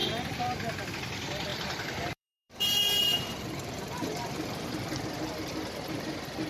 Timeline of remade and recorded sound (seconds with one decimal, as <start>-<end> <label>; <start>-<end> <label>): 0.0-1.5 recorded; 1.5-5.0 remade; 5.0-6.5 recorded